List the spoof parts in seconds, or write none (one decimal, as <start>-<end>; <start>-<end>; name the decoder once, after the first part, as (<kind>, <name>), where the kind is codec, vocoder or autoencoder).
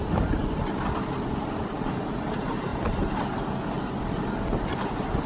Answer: none